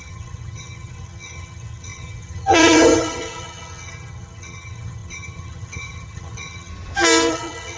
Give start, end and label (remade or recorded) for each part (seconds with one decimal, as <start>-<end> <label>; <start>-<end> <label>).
0.0-6.7 remade; 6.7-7.3 recorded; 7.3-7.8 remade